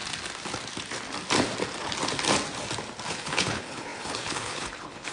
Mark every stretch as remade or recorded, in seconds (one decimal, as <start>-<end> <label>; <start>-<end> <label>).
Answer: 0.0-3.1 recorded; 3.1-5.1 remade